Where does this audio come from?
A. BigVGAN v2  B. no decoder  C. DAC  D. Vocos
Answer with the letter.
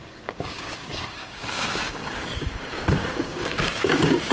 C